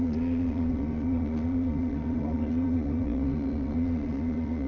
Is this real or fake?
fake